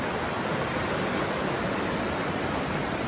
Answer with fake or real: real